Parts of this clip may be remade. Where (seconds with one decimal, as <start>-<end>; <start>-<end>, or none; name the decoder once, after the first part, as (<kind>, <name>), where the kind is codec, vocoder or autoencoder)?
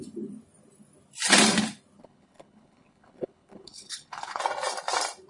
2.0-4.4 (codec, HILCodec)